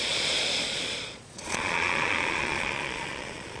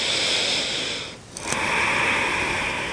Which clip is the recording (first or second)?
second